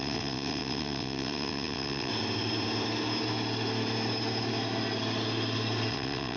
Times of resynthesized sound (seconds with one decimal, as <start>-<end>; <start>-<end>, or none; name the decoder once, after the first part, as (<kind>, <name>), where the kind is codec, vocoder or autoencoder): 0.0-2.1 (vocoder, WaveNeXt); 5.9-6.4